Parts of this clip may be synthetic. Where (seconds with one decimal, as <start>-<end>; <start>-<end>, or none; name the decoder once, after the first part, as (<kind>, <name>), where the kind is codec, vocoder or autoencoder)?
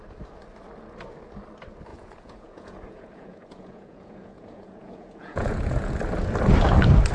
1.9-5.9 (vocoder, Vocos)